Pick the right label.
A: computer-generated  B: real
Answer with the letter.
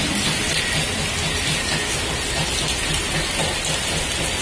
B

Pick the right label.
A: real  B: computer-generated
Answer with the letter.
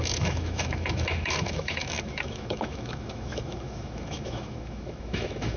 B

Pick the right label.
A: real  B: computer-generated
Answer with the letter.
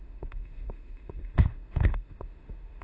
B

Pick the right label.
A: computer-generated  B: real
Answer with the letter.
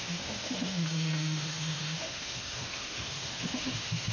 A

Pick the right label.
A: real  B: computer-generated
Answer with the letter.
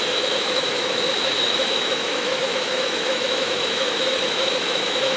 B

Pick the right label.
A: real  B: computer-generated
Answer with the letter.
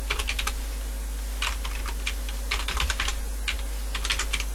A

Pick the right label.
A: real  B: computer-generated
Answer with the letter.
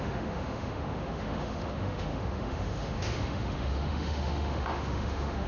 B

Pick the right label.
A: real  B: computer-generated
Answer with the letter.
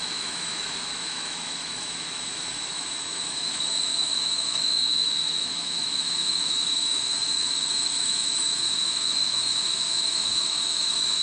B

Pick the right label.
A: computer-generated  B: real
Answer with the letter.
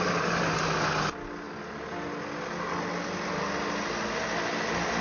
B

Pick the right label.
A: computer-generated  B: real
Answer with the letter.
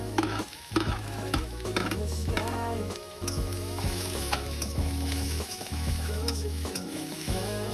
A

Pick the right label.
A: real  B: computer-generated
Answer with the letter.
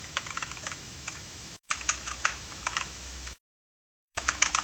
B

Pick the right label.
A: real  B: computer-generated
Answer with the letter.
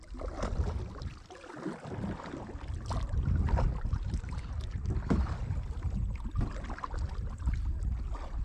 A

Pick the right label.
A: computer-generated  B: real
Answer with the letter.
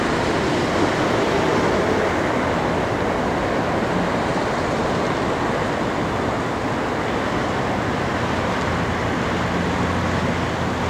B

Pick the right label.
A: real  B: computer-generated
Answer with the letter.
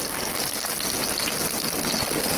A